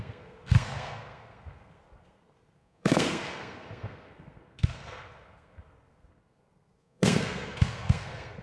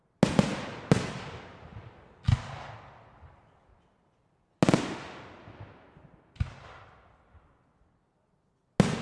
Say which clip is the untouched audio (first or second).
second